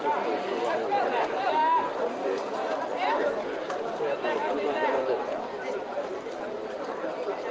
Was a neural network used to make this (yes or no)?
no